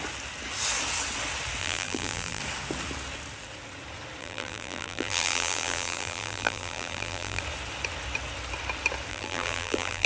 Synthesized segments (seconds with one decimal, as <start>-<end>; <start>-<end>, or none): 1.6-2.4; 4.2-7.4; 9.1-10.1